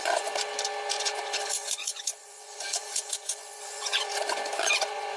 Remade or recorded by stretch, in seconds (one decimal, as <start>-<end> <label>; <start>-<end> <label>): 0.0-0.4 remade; 0.4-0.9 recorded; 0.9-5.2 remade